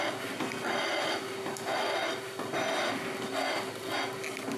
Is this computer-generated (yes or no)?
no